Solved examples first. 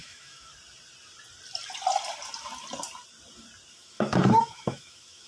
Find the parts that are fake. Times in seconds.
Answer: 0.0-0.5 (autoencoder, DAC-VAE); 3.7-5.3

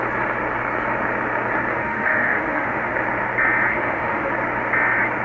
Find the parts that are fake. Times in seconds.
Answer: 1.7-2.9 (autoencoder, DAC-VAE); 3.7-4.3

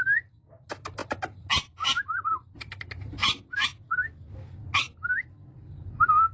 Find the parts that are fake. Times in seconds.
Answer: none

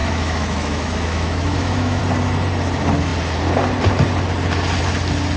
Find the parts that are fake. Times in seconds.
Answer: 0.0-2.0 (autoencoder, DAC-VAE)

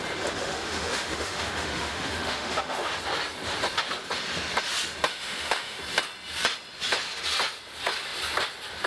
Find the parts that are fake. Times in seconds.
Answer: 0.4-2.9 (autoencoder, DAC-VAE); 5.1-5.8